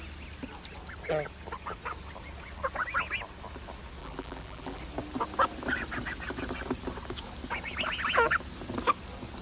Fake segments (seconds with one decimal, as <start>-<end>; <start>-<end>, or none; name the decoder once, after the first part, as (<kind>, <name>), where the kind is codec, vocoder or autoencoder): 4.0-4.8 (vocoder, BigVGAN v2)